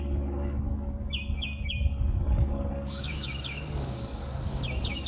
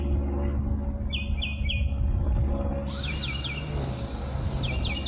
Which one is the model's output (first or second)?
first